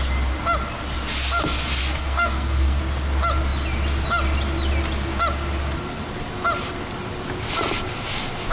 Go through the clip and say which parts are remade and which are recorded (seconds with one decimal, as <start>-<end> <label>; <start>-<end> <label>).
0.0-1.8 recorded; 1.8-2.8 remade; 2.8-8.5 recorded